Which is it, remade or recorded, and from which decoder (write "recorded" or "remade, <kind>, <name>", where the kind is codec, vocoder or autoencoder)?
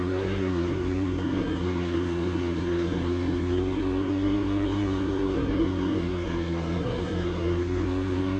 remade, codec, SNAC